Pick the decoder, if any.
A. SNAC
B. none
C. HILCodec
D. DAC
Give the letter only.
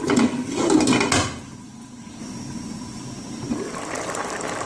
B